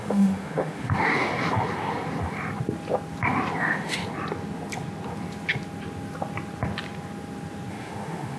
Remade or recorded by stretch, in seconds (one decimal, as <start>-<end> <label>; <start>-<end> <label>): 0.0-1.3 remade; 1.3-3.6 recorded; 3.6-4.0 remade; 4.0-7.7 recorded; 7.7-8.4 remade